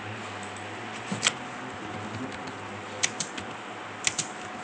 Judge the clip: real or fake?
real